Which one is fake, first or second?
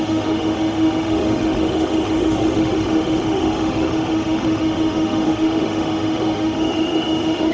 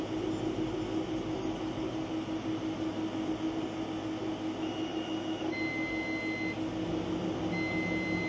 first